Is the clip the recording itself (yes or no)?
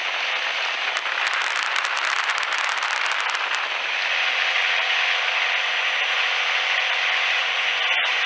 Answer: yes